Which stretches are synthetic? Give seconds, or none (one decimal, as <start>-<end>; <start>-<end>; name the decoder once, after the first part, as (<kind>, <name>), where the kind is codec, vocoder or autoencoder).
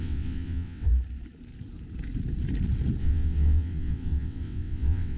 0.0-0.9 (vocoder, WaveNeXt); 3.0-5.2